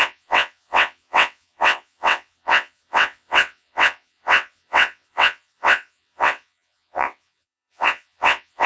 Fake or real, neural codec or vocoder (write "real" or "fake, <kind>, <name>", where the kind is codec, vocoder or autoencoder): fake, vocoder, WaveNeXt